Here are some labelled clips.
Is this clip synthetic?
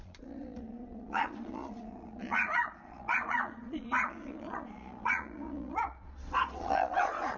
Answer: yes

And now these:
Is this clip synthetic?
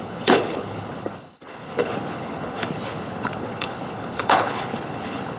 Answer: yes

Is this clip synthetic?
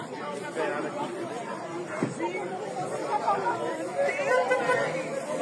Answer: yes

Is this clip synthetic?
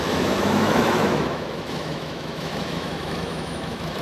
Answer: yes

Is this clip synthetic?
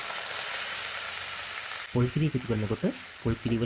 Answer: no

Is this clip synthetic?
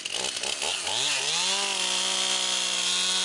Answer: no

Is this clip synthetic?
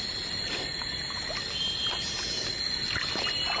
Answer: no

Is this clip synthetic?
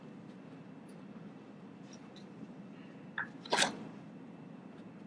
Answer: no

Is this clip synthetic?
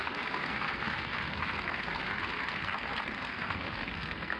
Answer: yes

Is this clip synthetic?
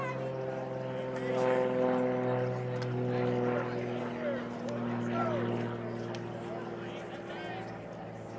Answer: no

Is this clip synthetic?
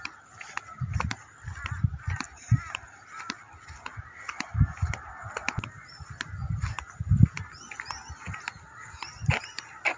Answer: no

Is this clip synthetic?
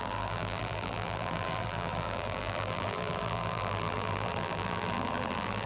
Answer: yes